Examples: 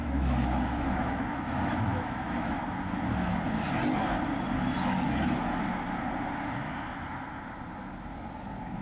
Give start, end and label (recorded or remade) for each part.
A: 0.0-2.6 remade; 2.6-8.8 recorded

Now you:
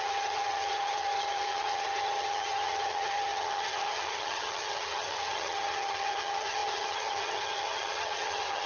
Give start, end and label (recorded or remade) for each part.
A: 0.0-8.7 remade

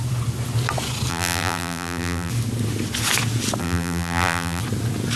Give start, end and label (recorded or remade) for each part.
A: 0.0-1.1 recorded; 1.1-2.3 remade; 2.3-3.6 recorded; 3.6-4.6 remade; 4.6-5.2 recorded

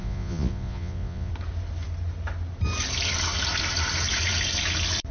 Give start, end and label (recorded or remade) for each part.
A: 0.0-1.3 remade; 1.3-5.1 recorded

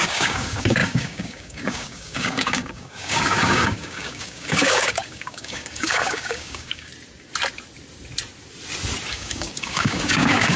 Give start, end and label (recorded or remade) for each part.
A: 0.0-6.9 remade; 6.9-9.1 recorded; 9.1-10.6 remade